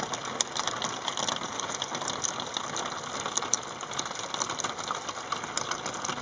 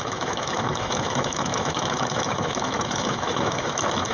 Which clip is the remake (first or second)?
second